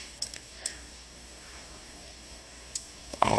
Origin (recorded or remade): remade